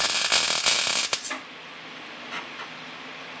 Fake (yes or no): no